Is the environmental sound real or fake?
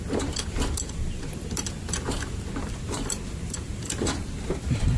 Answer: fake